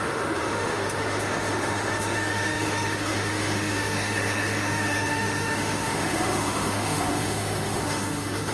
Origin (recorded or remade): remade